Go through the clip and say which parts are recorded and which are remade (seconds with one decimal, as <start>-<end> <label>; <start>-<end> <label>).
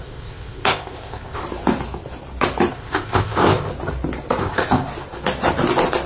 0.0-1.4 remade; 1.4-2.7 recorded; 2.7-3.7 remade; 3.7-4.4 recorded; 4.4-4.9 remade; 4.9-6.1 recorded